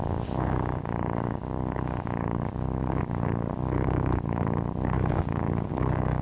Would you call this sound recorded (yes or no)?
no